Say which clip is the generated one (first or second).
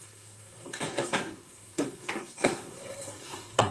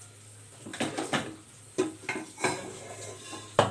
first